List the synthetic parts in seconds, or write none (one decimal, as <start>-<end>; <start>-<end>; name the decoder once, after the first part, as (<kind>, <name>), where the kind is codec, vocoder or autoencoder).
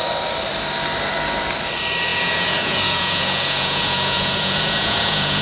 2.1-5.4 (vocoder, Vocos)